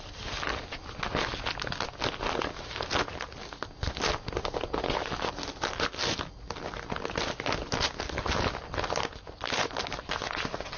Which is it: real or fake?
real